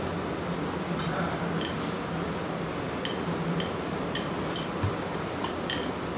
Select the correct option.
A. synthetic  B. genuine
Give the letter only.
B